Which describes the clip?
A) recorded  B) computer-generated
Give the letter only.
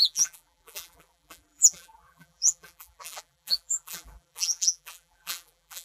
B